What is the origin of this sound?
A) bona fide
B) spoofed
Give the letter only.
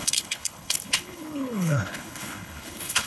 B